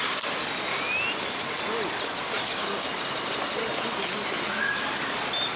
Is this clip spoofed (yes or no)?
no